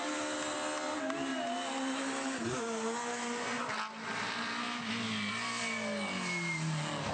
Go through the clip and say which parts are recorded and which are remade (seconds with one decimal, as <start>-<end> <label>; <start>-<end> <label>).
0.0-7.1 recorded